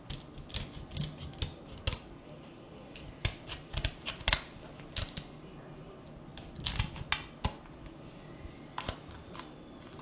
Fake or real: real